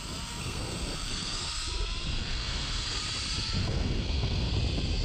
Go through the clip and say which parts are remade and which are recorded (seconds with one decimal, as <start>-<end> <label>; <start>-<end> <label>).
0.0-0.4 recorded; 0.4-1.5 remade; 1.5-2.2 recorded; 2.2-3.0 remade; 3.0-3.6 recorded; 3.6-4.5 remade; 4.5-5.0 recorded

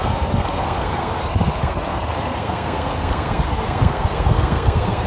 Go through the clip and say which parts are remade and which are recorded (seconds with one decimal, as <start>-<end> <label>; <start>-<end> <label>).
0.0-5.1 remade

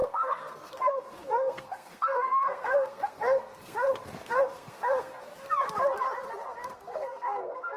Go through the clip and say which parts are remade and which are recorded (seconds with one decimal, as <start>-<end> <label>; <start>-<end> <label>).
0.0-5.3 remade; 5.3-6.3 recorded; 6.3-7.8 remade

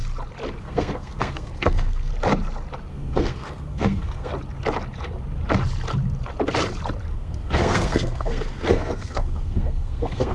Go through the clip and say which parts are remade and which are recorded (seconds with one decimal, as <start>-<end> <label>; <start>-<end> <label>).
0.0-0.6 recorded; 0.6-2.1 remade; 2.1-2.9 recorded; 2.9-4.3 remade; 4.3-7.1 recorded; 7.1-10.3 remade

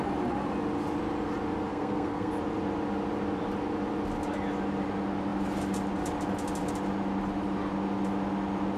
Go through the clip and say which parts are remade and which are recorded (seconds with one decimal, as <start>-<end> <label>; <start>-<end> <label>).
0.0-1.7 recorded; 1.7-2.3 remade; 2.3-8.8 recorded